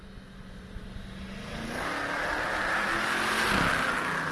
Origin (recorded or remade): recorded